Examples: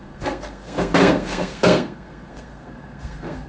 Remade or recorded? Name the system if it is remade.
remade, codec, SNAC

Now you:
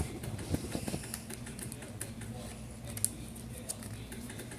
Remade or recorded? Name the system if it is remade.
recorded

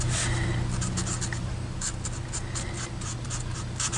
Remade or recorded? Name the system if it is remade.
recorded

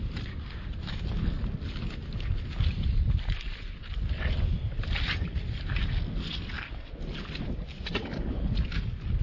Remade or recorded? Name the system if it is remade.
recorded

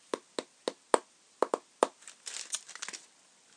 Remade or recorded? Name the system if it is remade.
recorded